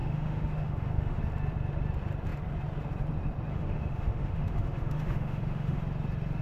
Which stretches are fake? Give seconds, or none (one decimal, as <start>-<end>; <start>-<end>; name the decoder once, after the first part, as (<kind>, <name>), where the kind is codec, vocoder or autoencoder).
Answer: 0.0-1.2 (autoencoder, DAC-VAE); 3.5-5.8